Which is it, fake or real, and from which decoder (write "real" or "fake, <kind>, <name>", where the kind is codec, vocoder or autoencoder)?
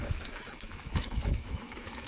fake, autoencoder, DAC-VAE